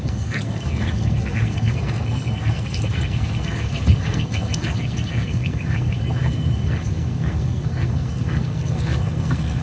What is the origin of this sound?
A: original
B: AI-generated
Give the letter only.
B